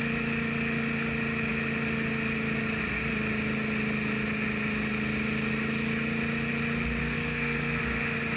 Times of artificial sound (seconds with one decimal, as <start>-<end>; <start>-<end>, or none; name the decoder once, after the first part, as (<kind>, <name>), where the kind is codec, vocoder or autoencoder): 7.0-7.8 (codec, SNAC)